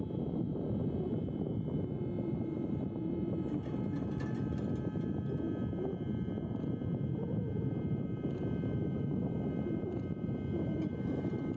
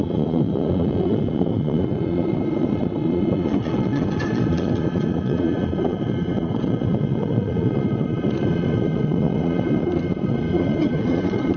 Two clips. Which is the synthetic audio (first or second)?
second